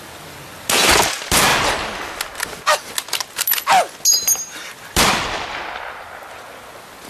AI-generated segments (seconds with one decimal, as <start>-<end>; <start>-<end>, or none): none